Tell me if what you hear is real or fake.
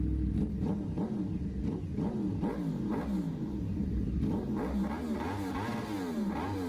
real